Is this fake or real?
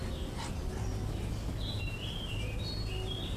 real